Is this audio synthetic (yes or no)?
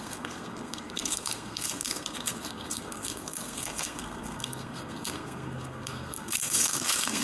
yes